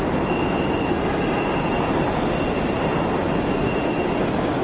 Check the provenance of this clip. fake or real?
real